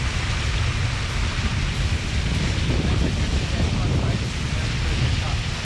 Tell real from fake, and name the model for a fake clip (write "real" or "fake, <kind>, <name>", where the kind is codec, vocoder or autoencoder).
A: real